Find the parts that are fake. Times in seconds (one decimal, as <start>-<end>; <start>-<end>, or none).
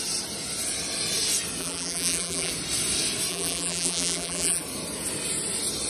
1.6-2.5; 3.3-4.6